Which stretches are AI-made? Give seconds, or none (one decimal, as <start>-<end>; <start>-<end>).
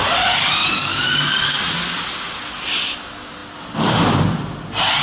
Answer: 0.6-1.6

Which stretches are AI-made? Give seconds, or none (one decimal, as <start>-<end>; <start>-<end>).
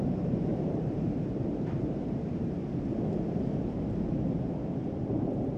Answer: 0.0-2.6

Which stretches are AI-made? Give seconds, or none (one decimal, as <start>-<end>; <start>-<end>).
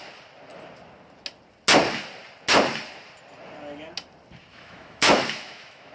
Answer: 4.5-5.9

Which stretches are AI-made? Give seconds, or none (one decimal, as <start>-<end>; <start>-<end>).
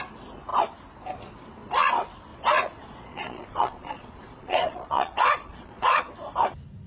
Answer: 2.3-6.1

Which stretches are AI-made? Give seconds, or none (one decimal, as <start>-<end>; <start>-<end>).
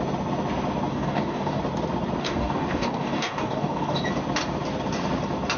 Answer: 0.9-1.6; 2.2-4.0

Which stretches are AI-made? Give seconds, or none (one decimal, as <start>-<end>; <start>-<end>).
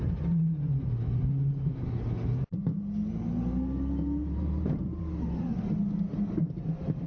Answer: 4.2-5.0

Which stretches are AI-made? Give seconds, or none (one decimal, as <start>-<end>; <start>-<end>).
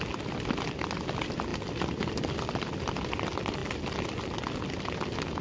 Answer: none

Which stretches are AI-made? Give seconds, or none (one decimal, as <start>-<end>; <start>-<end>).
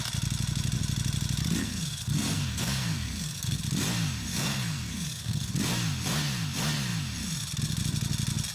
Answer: 1.6-3.6; 4.3-5.5